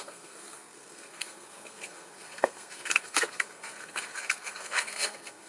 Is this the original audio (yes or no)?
no